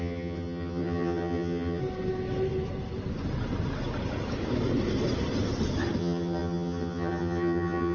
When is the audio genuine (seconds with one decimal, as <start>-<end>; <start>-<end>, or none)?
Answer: 1.8-6.0